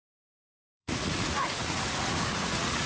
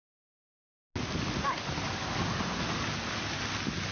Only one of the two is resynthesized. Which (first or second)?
first